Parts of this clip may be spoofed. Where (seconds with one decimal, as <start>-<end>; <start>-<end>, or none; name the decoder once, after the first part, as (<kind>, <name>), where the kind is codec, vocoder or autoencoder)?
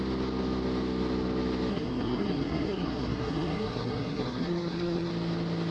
1.7-5.1 (codec, SNAC)